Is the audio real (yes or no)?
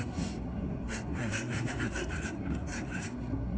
no